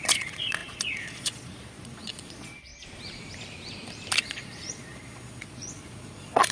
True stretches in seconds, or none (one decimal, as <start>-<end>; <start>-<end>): 2.7-4.2